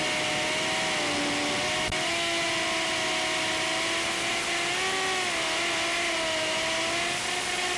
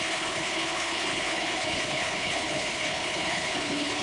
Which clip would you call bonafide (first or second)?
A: first